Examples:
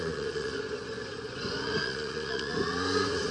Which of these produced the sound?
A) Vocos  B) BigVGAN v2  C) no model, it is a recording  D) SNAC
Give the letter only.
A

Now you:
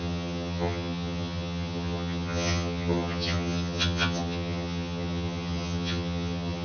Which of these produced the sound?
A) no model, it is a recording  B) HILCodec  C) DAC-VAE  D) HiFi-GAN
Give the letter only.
D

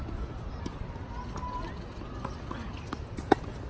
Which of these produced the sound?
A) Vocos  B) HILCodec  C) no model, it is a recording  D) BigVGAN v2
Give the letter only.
C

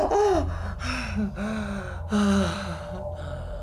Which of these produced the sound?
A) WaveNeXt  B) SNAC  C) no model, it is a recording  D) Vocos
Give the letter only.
C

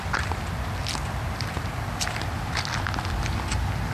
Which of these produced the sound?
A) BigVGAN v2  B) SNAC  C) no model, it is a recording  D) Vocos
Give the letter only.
C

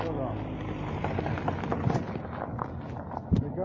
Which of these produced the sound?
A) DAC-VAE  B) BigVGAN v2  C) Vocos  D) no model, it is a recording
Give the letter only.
D